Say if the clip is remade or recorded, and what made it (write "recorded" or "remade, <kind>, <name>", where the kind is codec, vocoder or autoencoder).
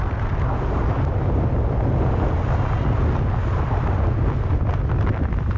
recorded